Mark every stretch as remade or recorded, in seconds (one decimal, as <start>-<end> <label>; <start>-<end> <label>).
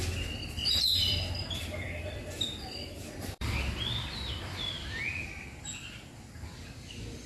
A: 0.0-0.6 recorded; 0.6-4.3 remade; 4.3-7.3 recorded